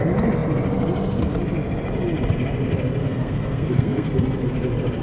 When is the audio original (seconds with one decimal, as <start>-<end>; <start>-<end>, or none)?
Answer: 0.0-3.0; 4.1-5.0